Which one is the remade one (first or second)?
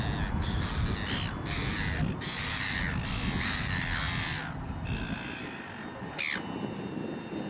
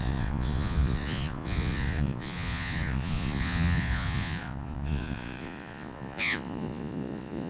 second